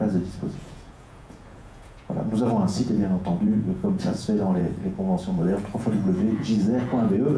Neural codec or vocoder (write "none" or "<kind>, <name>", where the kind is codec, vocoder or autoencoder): vocoder, Vocos